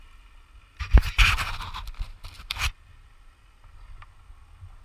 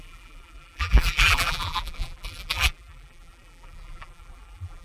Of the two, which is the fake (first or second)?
second